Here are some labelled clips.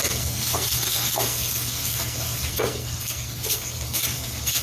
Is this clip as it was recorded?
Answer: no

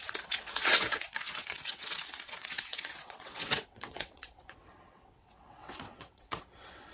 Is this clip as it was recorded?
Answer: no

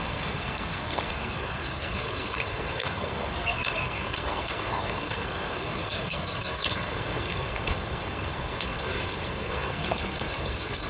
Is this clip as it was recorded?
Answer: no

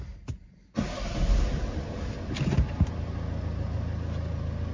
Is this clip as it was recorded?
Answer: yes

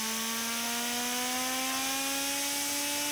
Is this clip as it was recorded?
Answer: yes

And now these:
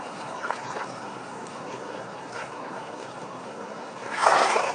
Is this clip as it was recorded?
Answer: no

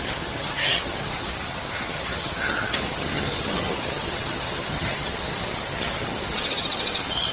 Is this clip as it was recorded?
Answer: no